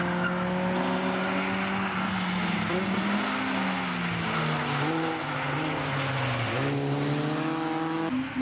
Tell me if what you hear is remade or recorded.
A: recorded